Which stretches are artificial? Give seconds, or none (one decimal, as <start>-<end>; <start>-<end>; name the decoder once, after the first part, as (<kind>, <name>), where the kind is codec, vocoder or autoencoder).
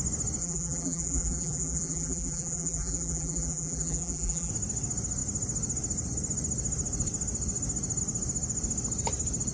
0.4-4.5 (vocoder, BigVGAN v2)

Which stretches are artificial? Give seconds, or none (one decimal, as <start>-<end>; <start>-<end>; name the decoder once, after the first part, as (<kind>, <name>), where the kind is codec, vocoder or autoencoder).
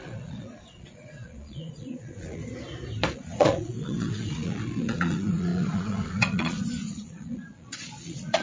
0.0-2.4 (vocoder, Vocos); 3.1-8.4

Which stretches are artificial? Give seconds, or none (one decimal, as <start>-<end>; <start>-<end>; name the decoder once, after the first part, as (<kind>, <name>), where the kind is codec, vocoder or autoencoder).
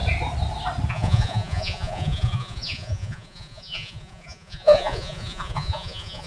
0.9-6.3 (vocoder, Vocos)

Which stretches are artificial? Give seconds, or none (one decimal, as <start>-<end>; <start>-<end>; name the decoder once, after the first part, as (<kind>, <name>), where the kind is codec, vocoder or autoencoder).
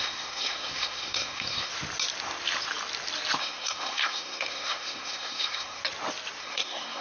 0.0-1.7 (codec, SNAC); 3.4-5.8; 6.4-7.0